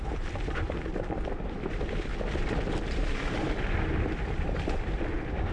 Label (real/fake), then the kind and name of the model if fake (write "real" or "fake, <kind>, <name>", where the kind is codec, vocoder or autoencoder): fake, vocoder, BigVGAN v2